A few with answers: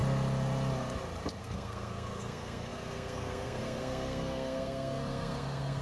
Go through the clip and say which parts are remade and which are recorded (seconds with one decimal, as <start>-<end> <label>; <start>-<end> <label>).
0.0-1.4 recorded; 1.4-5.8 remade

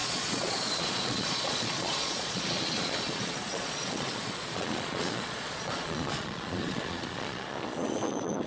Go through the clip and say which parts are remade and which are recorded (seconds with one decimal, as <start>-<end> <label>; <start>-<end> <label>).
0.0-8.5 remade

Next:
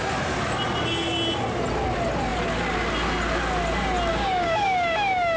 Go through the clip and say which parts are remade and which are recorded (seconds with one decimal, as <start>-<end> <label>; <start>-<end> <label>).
0.0-4.1 recorded; 4.1-5.4 remade

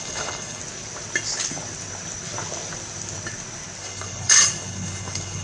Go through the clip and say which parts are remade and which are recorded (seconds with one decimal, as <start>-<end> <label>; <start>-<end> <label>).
0.0-0.6 remade; 0.6-3.8 recorded; 3.8-5.4 remade

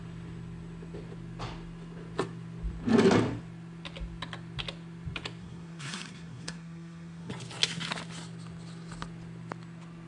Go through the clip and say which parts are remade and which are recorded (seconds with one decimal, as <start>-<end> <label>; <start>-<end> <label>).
0.0-5.4 recorded; 5.4-7.3 remade; 7.3-10.1 recorded

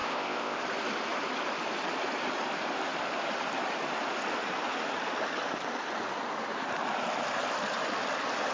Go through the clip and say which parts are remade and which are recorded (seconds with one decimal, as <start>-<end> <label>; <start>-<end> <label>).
0.0-0.6 remade; 0.6-8.5 recorded